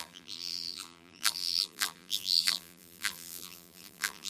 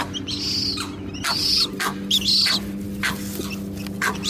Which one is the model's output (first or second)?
first